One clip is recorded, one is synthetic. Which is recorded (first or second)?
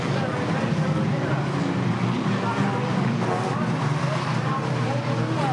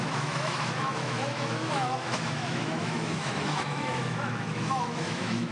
first